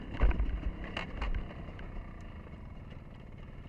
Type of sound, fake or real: real